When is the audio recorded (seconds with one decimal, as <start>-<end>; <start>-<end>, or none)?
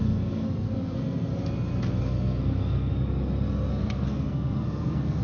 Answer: 1.3-2.0; 2.9-3.7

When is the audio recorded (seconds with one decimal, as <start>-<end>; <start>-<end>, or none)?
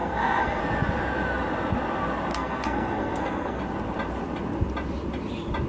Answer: 0.6-2.3; 3.6-5.7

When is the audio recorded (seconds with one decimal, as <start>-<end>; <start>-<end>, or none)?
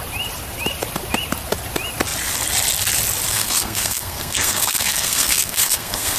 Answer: 0.0-3.3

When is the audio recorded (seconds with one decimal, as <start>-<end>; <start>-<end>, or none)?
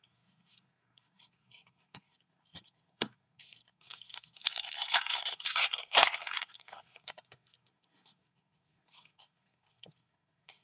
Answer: none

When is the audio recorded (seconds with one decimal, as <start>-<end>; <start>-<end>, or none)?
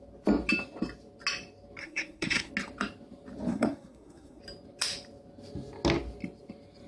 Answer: 0.0-1.8; 2.5-3.5; 4.4-6.9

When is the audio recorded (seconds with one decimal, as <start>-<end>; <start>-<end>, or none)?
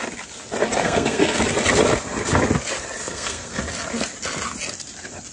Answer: 0.0-0.8; 1.4-3.0; 3.6-5.3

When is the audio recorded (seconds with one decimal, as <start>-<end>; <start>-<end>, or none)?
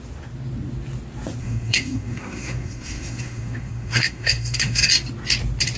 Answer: 0.0-1.4; 4.9-5.8